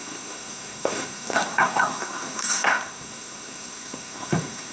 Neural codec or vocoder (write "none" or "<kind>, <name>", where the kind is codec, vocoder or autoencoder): codec, SNAC